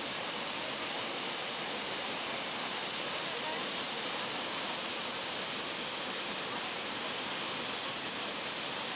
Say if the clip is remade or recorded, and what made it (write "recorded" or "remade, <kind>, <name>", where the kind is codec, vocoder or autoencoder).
recorded